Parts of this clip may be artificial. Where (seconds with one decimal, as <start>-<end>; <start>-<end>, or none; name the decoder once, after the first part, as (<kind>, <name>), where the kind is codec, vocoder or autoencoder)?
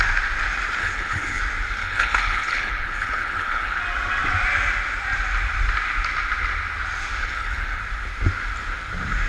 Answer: 0.8-1.4 (codec, HILCodec); 1.8-3.8; 7.2-7.8